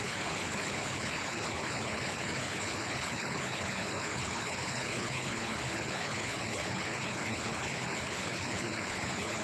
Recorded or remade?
remade